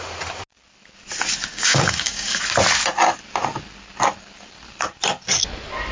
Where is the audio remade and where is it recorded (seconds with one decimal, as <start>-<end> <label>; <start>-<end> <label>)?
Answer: 0.0-1.5 recorded; 1.5-2.4 remade; 2.4-5.9 recorded